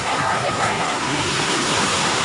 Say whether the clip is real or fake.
fake